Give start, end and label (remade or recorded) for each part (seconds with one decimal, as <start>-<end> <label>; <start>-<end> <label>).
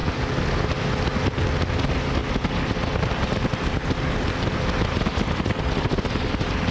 0.0-6.7 recorded